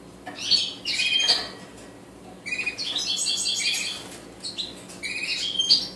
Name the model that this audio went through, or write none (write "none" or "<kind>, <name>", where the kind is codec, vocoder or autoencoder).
none